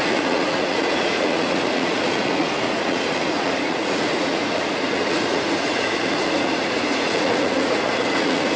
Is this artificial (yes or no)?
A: yes